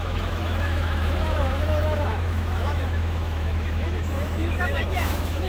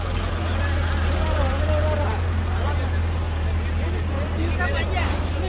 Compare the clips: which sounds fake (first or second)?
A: first